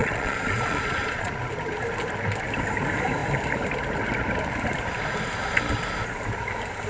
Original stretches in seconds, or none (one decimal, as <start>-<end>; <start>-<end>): 1.3-6.9